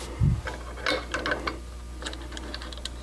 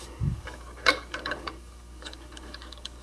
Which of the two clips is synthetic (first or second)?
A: second